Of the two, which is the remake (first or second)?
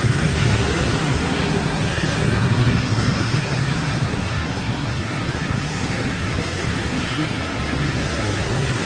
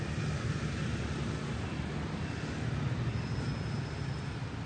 first